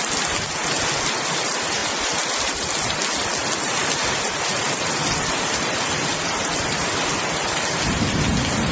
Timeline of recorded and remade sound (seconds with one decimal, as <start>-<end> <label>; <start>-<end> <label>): 0.0-8.7 recorded